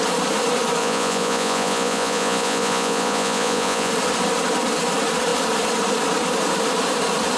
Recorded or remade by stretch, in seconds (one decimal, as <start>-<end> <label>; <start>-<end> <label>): 0.0-0.8 recorded; 0.8-3.9 remade; 3.9-7.4 recorded